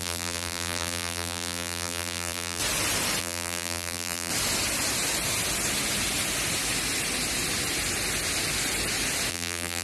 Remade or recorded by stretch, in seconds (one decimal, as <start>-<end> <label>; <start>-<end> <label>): 0.0-2.6 remade; 2.6-3.2 recorded; 3.2-4.3 remade; 4.3-9.3 recorded; 9.3-9.8 remade